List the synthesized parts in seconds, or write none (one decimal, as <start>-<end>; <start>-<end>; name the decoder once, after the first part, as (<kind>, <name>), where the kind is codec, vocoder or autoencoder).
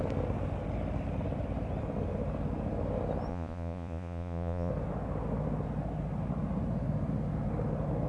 3.3-4.7 (vocoder, Vocos)